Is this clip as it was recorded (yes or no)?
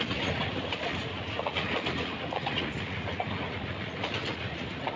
no